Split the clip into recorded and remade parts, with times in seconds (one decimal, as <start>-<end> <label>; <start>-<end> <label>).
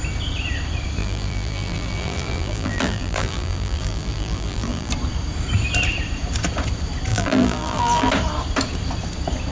0.0-1.0 recorded; 1.0-4.9 remade; 4.9-7.1 recorded; 7.1-8.1 remade; 8.1-9.5 recorded